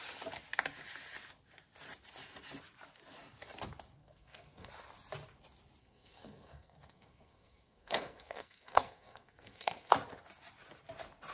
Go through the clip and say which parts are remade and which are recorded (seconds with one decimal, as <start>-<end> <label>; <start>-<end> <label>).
0.0-4.0 recorded; 4.0-4.7 remade; 4.7-5.8 recorded; 5.8-9.9 remade; 9.9-11.3 recorded